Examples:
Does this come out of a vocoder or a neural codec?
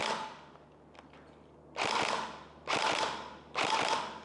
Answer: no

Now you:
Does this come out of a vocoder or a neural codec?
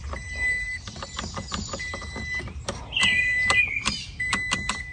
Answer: yes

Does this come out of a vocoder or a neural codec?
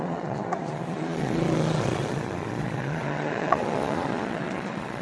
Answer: yes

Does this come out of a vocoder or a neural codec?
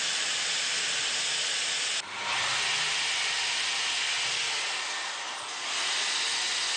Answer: no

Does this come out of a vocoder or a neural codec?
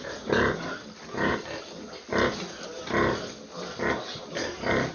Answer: no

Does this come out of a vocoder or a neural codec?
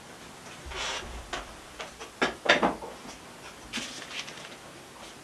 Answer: no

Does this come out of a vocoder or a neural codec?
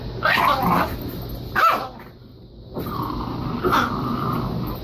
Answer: no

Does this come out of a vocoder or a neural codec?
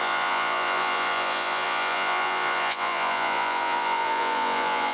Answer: yes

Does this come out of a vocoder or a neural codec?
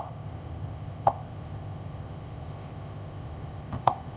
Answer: yes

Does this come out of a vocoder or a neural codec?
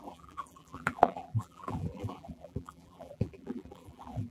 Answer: yes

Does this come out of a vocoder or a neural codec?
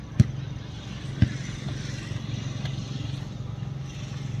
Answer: no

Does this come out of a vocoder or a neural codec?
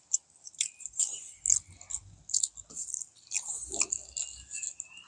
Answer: no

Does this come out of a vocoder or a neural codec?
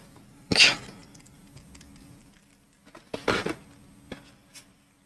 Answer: no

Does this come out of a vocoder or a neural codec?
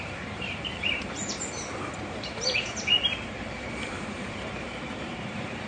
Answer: yes